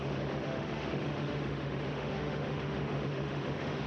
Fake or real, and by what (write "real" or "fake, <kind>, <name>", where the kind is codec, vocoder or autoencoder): fake, autoencoder, DAC-VAE